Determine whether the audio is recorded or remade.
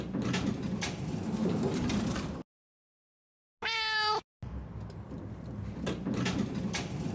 recorded